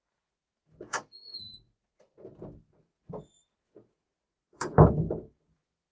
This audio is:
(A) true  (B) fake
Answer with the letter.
B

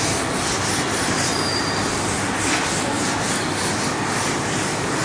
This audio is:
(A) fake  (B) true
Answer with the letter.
B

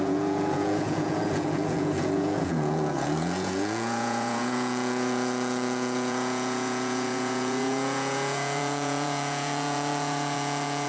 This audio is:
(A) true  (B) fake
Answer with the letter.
B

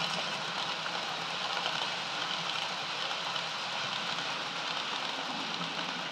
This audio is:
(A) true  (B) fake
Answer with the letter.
A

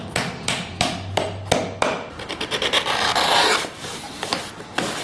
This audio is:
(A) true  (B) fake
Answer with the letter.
A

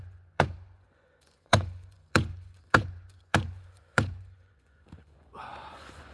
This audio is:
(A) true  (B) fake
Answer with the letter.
B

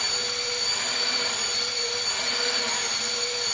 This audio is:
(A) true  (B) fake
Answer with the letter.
A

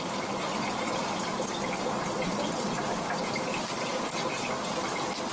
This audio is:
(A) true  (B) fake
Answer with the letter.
A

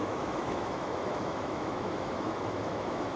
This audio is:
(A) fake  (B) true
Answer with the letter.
A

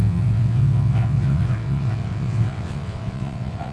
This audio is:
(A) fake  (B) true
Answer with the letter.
A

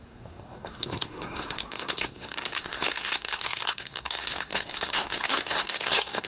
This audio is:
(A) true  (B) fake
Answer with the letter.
B